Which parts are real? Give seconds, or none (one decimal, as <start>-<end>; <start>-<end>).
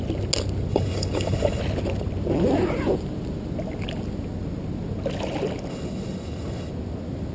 0.0-0.7; 1.6-5.7; 6.7-7.3